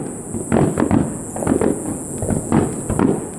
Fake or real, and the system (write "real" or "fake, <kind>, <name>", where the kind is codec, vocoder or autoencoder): real